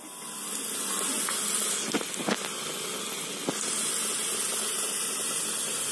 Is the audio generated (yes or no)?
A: no